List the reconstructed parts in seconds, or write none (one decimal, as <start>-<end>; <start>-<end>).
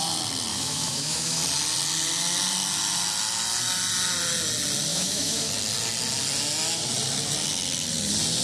0.5-1.4; 4.9-5.5